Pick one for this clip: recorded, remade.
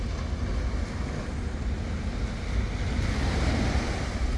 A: recorded